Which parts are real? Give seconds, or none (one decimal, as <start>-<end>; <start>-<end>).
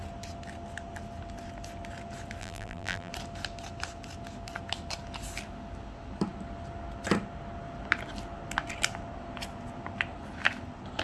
0.0-2.4; 3.1-11.0